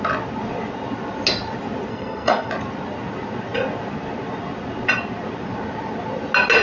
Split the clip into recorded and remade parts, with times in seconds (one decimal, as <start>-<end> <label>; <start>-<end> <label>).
0.0-1.9 recorded; 1.9-2.5 remade; 2.5-6.6 recorded